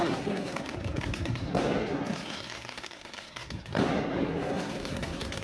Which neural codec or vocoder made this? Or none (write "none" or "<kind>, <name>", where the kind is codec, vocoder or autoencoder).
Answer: codec, SNAC